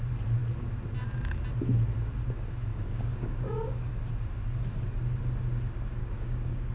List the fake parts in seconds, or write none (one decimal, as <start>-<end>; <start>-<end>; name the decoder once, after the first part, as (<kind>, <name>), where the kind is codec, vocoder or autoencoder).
2.7-3.9 (codec, DAC); 6.0-6.7